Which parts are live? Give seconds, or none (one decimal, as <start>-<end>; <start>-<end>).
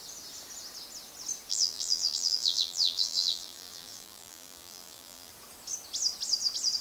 0.0-1.5; 5.3-6.8